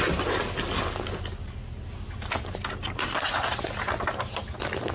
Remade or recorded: recorded